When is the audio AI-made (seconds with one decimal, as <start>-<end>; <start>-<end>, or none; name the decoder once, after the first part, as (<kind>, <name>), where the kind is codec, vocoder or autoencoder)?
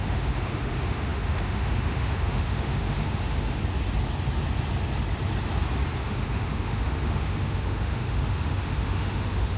0.0-3.6 (autoencoder, DAC-VAE); 6.0-9.6